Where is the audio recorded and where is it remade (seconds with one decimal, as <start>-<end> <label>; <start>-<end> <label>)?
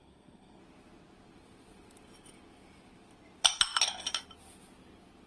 0.0-0.6 remade; 0.6-5.3 recorded